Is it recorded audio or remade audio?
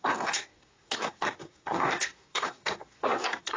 remade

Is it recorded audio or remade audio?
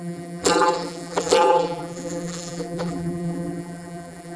remade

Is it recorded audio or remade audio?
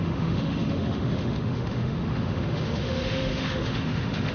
remade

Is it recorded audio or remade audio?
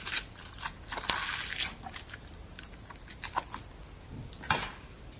recorded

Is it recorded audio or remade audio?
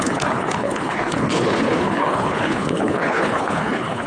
remade